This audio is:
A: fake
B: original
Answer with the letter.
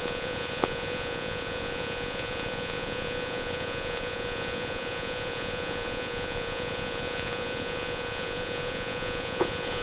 A